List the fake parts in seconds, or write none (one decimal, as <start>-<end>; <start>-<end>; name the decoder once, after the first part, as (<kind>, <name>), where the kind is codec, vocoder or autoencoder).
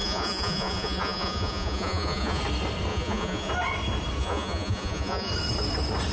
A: 0.0-2.4 (vocoder, Vocos); 2.9-3.5; 4.2-5.3